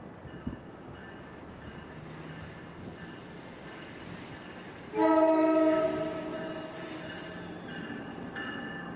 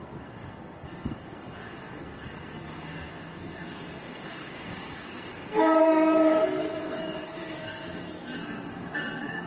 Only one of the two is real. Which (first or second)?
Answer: first